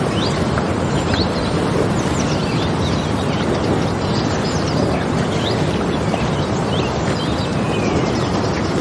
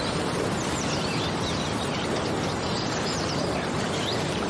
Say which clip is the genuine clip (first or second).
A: first